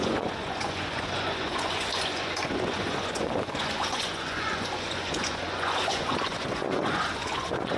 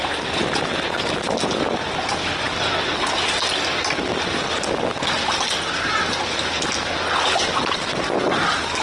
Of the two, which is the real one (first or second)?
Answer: second